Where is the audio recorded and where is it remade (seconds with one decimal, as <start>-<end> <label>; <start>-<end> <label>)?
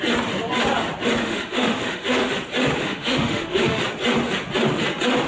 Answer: 0.0-1.2 recorded; 1.2-2.3 remade; 2.3-2.8 recorded; 2.8-3.8 remade; 3.8-5.3 recorded